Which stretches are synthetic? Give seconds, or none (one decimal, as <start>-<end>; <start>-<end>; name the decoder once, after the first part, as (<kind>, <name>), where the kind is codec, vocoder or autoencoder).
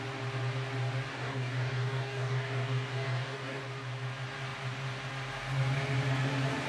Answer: 1.1-3.6 (codec, DAC)